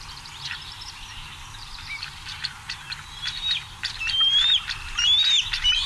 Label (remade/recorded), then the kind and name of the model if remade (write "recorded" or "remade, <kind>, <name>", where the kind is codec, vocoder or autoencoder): remade, vocoder, BigVGAN v2